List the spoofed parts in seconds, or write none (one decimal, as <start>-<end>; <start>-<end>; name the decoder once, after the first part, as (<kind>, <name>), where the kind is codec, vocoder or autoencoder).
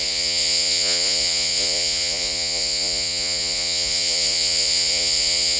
0.0-5.6 (vocoder, Vocos)